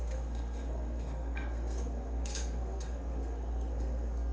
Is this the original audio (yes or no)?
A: no